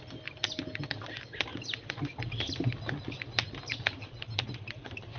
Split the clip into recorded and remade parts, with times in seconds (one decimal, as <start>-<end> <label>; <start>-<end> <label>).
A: 0.0-5.2 recorded